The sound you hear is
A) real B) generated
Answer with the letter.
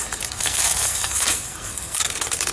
B